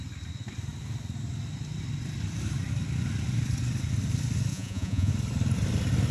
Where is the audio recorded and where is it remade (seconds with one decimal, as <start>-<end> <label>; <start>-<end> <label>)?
0.0-4.5 recorded; 4.5-5.1 remade; 5.1-6.1 recorded